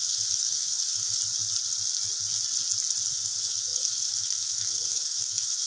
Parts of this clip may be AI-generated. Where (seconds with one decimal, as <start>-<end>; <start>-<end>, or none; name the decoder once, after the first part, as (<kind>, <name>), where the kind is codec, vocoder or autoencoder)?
0.0-1.2 (autoencoder, DAC-VAE); 3.1-5.7